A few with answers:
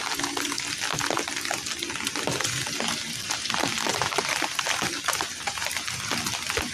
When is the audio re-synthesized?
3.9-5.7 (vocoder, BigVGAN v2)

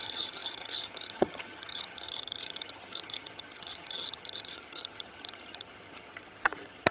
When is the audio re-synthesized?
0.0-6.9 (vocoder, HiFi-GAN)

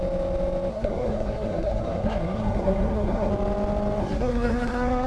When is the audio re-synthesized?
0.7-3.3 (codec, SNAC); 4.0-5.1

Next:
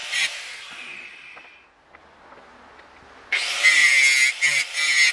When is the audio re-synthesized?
none